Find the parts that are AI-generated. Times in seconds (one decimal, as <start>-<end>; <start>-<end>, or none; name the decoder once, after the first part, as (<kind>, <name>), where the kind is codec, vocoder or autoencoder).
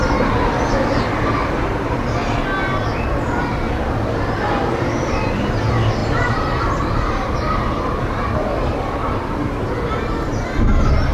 6.0-8.2 (vocoder, BigVGAN v2); 9.0-9.7